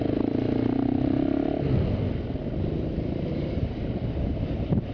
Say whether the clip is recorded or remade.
recorded